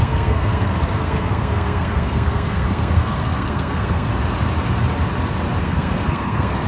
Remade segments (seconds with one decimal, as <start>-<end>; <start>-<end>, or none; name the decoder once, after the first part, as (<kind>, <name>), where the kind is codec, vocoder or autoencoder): 0.0-4.1 (codec, SNAC); 5.6-6.7